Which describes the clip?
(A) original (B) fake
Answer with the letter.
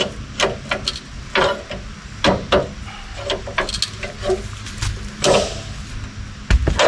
A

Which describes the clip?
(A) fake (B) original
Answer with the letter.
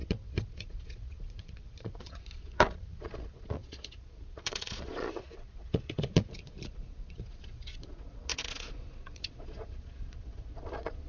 A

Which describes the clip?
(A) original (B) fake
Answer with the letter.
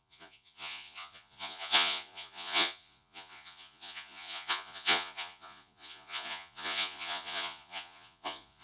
B